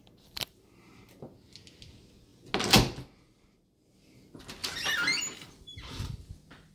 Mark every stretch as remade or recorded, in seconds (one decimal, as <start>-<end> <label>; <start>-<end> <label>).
0.0-0.7 remade; 0.7-4.6 recorded; 4.6-6.3 remade; 6.3-6.7 recorded